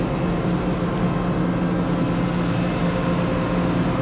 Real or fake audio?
real